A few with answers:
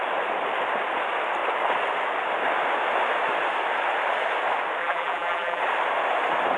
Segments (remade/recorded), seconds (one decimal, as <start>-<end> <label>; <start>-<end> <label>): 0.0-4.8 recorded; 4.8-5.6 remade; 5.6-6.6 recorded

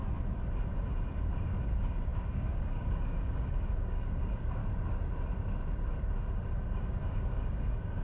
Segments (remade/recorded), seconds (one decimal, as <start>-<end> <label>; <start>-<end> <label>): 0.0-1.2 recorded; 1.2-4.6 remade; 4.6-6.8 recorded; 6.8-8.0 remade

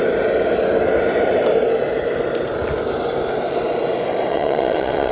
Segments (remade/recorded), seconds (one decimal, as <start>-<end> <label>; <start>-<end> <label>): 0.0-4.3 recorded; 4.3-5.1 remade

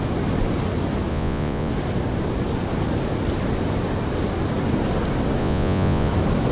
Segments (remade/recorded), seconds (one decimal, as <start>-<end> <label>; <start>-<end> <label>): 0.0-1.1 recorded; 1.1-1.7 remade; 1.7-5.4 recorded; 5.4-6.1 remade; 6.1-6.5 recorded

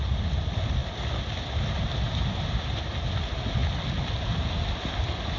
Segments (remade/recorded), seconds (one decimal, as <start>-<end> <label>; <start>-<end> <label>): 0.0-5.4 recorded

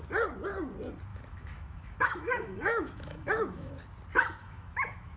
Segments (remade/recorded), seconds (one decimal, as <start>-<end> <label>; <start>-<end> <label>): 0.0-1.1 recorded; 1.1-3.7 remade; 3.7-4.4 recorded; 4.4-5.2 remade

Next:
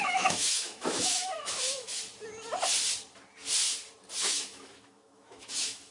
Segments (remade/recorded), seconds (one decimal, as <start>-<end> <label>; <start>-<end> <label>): 0.0-2.0 remade; 2.0-4.2 recorded; 4.2-5.9 remade

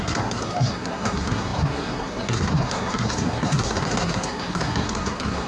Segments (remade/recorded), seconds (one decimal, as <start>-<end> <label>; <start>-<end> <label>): 0.0-5.5 remade